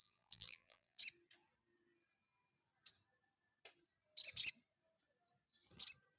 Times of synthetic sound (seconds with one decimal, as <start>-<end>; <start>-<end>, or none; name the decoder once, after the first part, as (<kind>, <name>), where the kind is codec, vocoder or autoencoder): 0.0-1.0 (vocoder, BigVGAN v2)